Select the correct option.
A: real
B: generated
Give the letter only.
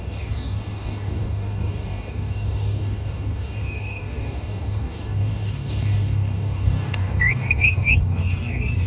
B